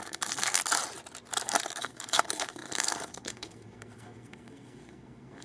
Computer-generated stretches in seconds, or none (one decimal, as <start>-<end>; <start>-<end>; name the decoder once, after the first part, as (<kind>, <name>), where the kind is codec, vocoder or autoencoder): 0.0-0.6 (codec, SNAC); 1.8-5.4